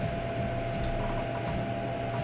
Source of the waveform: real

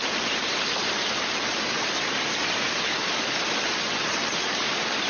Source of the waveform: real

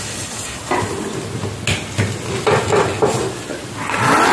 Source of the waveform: real